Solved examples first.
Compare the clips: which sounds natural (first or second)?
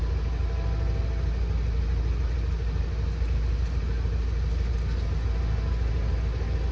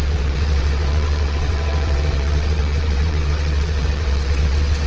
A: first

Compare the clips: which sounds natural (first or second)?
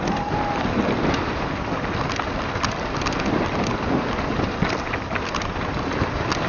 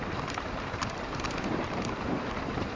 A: first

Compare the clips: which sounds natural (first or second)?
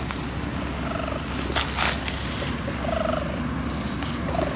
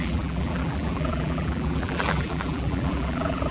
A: first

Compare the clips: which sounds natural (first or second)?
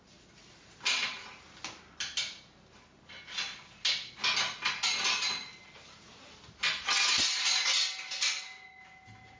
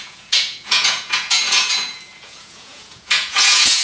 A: first